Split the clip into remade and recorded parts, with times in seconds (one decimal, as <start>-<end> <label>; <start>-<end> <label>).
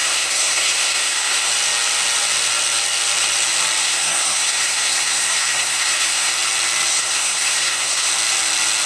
0.0-1.5 remade; 1.5-3.8 recorded; 3.8-6.3 remade; 6.3-6.9 recorded; 6.9-8.1 remade; 8.1-8.9 recorded